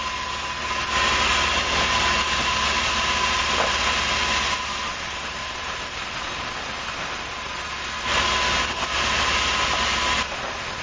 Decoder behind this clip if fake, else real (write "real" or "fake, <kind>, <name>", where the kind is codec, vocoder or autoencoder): real